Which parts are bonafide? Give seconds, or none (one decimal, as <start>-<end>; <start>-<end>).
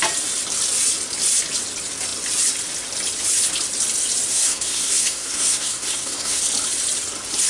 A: 0.0-4.3; 6.4-7.5